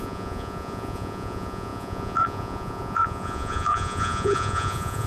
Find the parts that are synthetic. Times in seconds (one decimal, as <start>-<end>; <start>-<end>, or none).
0.0-5.1